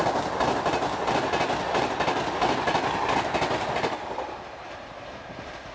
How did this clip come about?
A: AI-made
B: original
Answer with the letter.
B